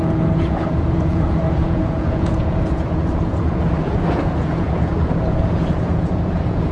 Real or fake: fake